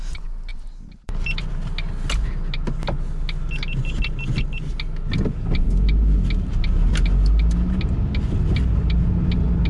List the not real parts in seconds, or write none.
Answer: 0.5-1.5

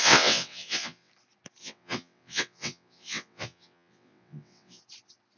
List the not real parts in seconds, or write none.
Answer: 0.0-1.1; 1.6-4.8

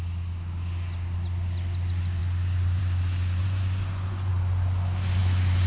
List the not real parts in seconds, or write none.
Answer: 3.4-4.3